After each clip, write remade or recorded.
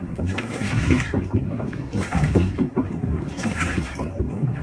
remade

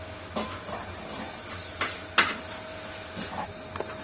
recorded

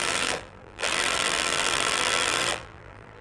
remade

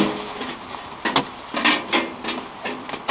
recorded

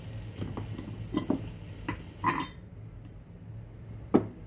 recorded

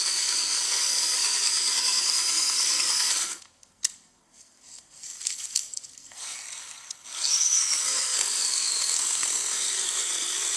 remade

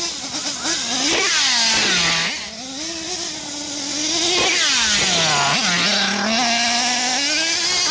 recorded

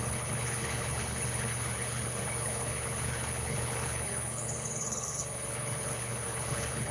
remade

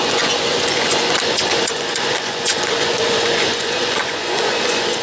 remade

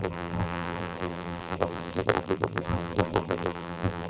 remade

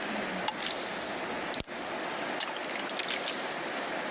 recorded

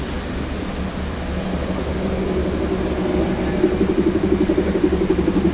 recorded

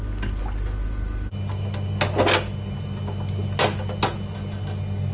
recorded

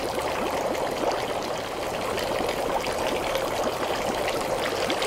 recorded